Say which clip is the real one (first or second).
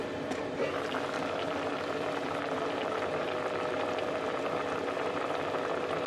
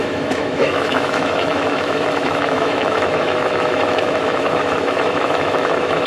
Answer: first